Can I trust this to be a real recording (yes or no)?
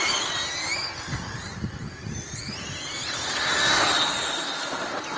yes